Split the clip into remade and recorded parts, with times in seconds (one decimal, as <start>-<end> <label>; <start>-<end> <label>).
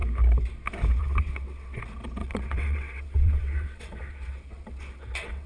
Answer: 0.0-1.0 recorded; 1.0-1.8 remade; 1.8-2.2 recorded; 2.2-5.5 remade